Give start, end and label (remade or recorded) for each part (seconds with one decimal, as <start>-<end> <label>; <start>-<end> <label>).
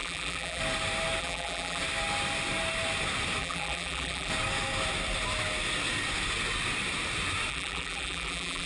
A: 0.0-0.6 remade; 0.6-1.2 recorded; 1.2-1.8 remade; 1.8-3.4 recorded; 3.4-4.3 remade; 4.3-7.5 recorded; 7.5-8.7 remade